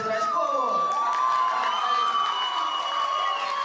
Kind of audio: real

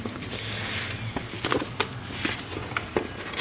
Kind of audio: real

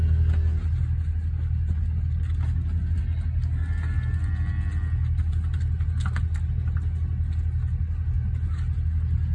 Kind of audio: real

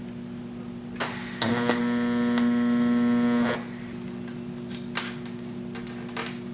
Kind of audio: real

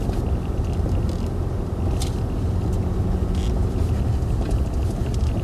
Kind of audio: real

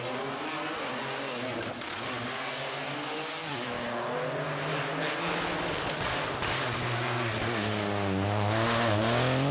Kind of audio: real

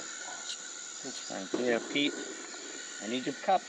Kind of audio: real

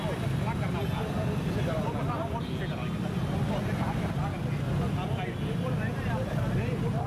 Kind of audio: real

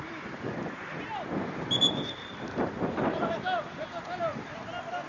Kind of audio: fake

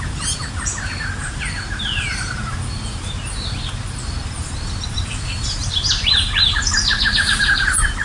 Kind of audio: fake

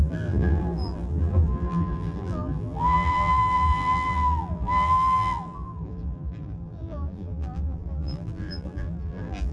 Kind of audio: fake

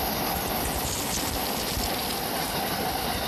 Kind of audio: real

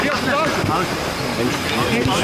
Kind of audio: real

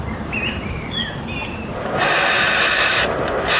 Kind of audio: fake